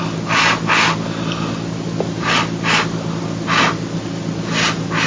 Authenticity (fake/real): real